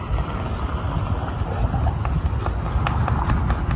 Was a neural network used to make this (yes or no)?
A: no